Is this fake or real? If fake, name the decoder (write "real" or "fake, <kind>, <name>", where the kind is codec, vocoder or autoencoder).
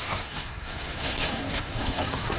fake, codec, SNAC